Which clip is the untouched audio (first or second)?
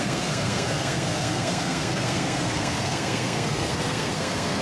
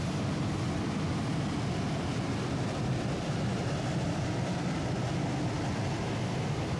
second